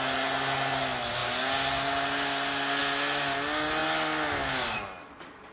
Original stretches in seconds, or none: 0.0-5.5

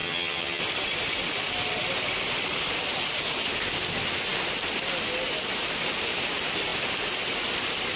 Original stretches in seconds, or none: 0.6-8.0

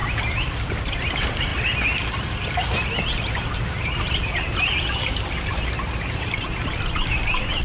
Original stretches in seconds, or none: 0.0-0.6; 1.5-3.1

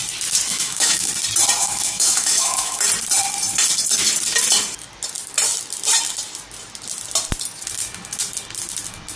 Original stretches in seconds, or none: 0.0-0.5; 1.1-1.6; 2.8-9.2